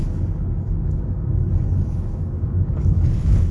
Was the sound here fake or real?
fake